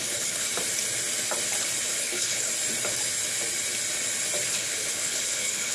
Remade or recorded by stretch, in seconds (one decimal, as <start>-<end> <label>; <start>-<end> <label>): 0.0-0.5 remade; 0.5-1.9 recorded; 1.9-2.5 remade; 2.5-4.5 recorded; 4.5-5.7 remade